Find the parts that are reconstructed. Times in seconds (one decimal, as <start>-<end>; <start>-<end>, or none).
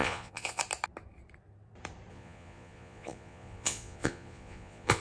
0.0-0.6; 2.1-5.0